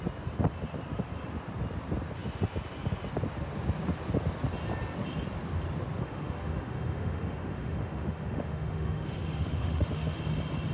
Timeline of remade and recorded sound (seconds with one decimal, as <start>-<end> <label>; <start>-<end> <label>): 0.0-6.0 recorded; 6.0-10.2 remade; 10.2-10.7 recorded